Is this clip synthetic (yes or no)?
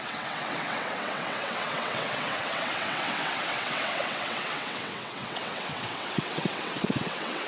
yes